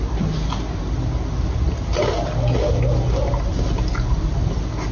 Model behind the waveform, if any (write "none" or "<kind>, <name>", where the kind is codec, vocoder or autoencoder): none